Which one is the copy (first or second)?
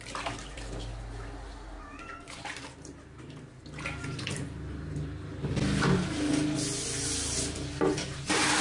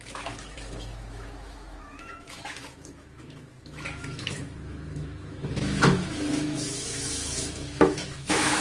second